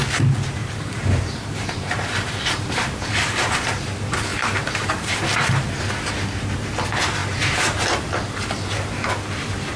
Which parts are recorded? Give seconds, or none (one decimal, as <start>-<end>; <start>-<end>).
0.0-0.6; 3.8-4.3; 5.5-9.8